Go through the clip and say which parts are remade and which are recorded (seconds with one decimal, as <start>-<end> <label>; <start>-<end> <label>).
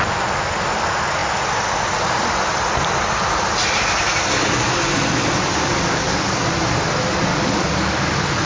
0.0-5.5 recorded; 5.5-6.5 remade; 6.5-7.3 recorded; 7.3-7.9 remade; 7.9-8.5 recorded